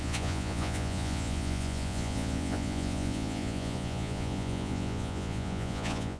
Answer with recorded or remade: remade